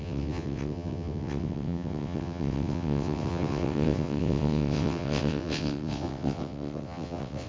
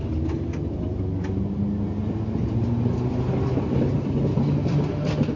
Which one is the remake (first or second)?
first